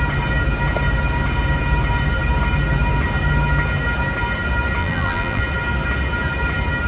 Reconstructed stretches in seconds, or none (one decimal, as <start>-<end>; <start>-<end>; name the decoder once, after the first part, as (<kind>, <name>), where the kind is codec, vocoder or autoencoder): 4.8-5.4 (vocoder, BigVGAN v2)